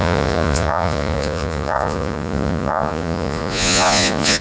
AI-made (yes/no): yes